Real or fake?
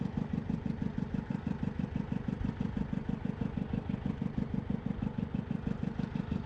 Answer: real